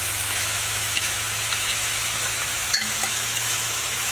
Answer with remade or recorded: remade